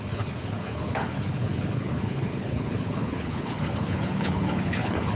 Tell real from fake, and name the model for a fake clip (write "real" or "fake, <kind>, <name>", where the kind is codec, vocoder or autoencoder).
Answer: fake, codec, HILCodec